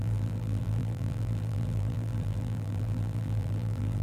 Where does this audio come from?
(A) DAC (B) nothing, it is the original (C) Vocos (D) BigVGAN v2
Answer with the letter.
D